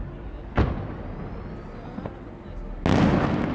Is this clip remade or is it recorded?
recorded